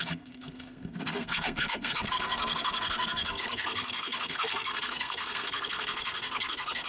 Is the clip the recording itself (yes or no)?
no